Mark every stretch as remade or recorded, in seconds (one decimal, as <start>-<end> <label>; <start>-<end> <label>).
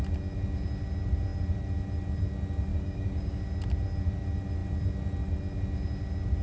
0.0-2.7 recorded; 2.7-3.4 remade; 3.4-6.4 recorded